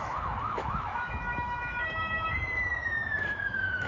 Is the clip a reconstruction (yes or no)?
yes